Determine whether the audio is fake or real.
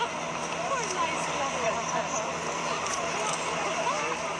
real